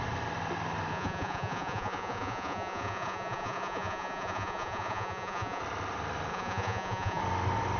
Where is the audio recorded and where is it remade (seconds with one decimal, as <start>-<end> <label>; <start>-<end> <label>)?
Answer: 0.0-0.9 recorded; 0.9-5.6 remade; 5.6-6.3 recorded; 6.3-7.2 remade; 7.2-7.8 recorded